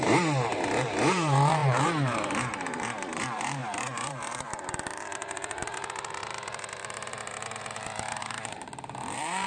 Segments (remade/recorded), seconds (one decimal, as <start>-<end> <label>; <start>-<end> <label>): 0.0-9.5 remade